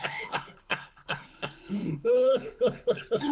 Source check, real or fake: fake